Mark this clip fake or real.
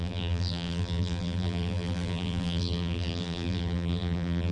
fake